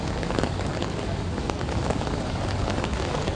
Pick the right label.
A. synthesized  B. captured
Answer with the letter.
A